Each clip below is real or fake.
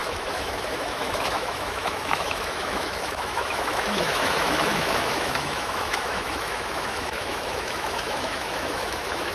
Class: fake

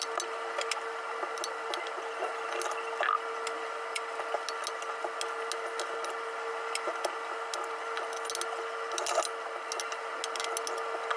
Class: real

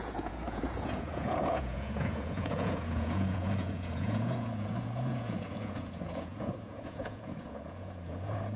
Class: fake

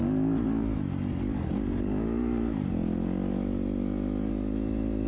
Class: real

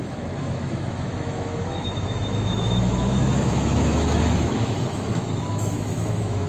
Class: fake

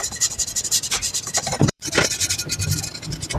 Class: fake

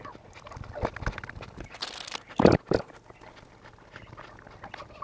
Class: real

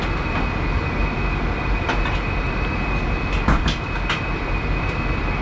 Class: real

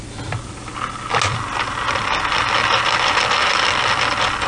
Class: real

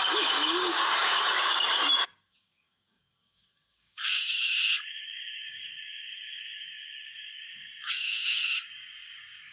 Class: fake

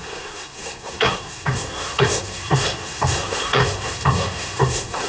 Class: fake